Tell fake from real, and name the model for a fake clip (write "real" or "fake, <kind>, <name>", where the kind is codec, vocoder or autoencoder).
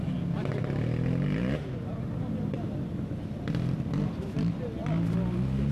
real